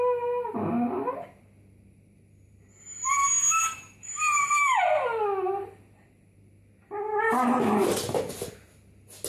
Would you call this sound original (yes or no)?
yes